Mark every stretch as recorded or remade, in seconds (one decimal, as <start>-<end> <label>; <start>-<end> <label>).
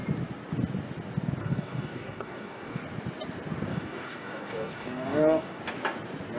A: 0.0-1.4 recorded; 1.4-2.8 remade; 2.8-3.7 recorded; 3.7-5.6 remade; 5.6-6.4 recorded